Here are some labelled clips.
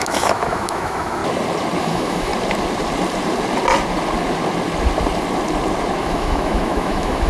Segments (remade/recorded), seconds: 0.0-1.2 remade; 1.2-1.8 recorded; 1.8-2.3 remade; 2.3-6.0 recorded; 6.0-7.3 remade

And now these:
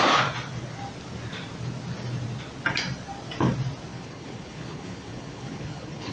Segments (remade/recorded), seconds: 0.0-3.9 recorded; 3.9-6.1 remade

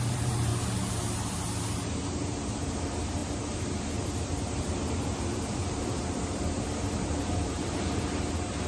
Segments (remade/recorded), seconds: 0.0-0.5 remade; 0.5-1.7 recorded; 1.7-8.7 remade